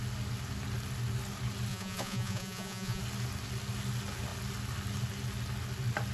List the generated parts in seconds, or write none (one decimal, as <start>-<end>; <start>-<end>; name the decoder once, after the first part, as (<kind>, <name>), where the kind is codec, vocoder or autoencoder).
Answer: 1.7-3.0 (vocoder, Vocos)